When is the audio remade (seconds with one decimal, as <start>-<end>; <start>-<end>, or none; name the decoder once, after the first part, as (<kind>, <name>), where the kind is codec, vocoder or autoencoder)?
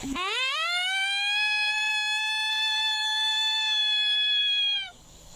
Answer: 0.0-1.9 (codec, DAC); 2.5-5.4